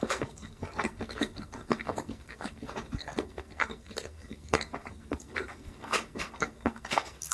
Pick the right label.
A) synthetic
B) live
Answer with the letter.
A